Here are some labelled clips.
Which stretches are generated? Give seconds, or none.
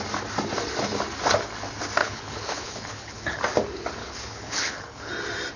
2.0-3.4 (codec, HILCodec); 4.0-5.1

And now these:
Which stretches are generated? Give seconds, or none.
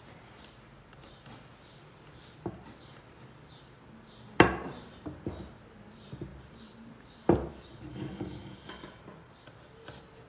7.9-9.0 (codec, DAC)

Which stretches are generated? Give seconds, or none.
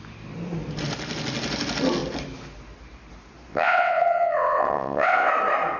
3.5-5.3 (vocoder, WaveNeXt)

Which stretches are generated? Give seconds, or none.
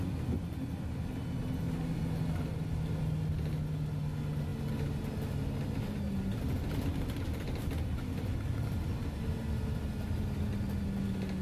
none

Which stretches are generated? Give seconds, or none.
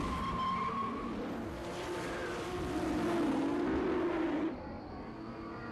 none